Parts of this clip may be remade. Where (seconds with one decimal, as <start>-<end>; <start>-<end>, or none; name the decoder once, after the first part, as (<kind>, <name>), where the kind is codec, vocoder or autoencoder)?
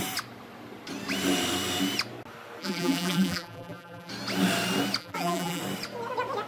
2.6-4.1 (vocoder, BigVGAN v2); 5.0-5.6